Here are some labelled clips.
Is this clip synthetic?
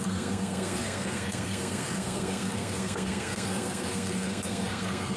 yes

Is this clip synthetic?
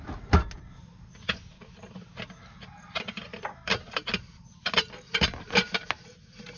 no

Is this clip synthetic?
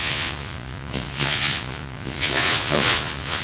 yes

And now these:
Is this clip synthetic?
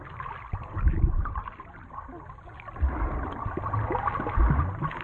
no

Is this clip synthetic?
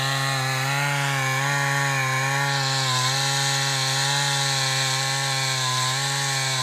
no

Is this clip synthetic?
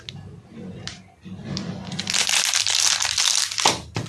no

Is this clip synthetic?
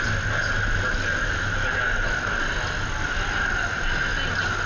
no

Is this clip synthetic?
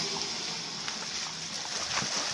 no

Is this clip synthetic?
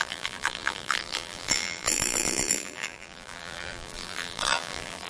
yes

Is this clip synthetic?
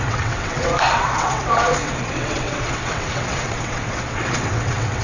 yes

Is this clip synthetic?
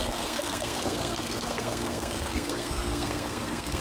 yes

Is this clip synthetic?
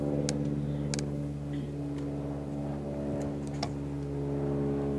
no